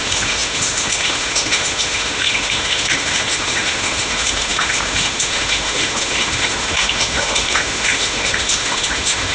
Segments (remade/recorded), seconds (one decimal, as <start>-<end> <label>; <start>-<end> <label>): 0.0-9.3 remade